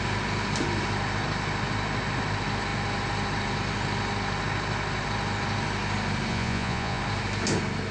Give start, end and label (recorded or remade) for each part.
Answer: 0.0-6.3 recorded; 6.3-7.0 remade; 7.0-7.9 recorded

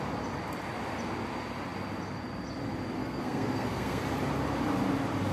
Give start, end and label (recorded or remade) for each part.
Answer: 0.0-3.0 recorded; 3.0-4.0 remade; 4.0-5.3 recorded

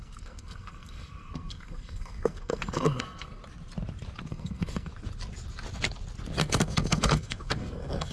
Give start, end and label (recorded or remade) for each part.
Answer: 0.0-3.4 remade; 3.4-4.3 recorded; 4.3-4.9 remade; 4.9-6.4 recorded; 6.4-8.1 remade

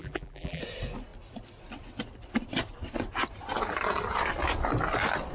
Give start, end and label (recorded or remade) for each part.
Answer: 0.0-0.6 remade; 0.6-5.3 recorded